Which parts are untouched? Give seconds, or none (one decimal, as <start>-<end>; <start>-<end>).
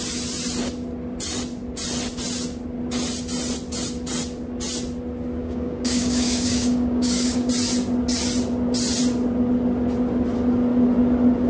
0.0-5.4; 7.5-11.5